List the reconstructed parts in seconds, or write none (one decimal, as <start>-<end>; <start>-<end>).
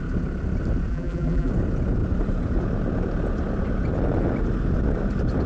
0.9-1.5